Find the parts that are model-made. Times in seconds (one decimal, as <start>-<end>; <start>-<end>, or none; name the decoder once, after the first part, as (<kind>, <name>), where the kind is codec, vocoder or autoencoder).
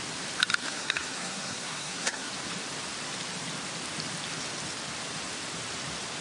0.6-2.3 (codec, SNAC)